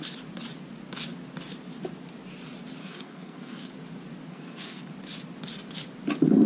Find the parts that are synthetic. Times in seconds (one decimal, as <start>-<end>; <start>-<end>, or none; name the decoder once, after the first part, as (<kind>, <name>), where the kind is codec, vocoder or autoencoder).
2.8-3.7 (codec, SNAC); 4.3-4.9